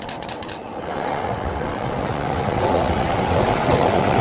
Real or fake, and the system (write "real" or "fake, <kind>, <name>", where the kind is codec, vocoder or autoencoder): fake, vocoder, WaveNeXt